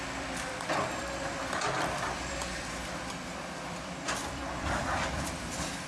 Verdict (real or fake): fake